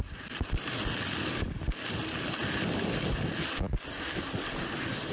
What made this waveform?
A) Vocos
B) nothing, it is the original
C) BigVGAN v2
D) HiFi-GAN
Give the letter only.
B